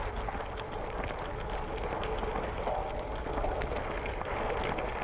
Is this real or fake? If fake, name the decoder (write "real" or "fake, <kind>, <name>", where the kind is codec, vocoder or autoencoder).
real